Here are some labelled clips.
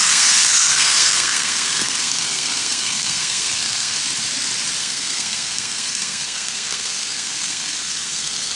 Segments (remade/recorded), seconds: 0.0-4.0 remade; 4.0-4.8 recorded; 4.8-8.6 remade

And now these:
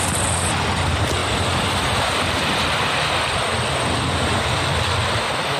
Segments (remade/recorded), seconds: 0.0-5.6 recorded

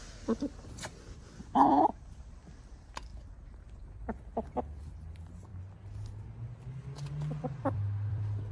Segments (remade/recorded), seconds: 0.0-3.1 remade; 3.1-4.8 recorded; 4.8-5.5 remade; 5.5-7.4 recorded; 7.4-8.5 remade

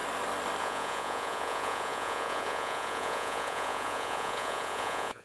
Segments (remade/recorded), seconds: 0.0-0.6 recorded; 0.6-5.2 remade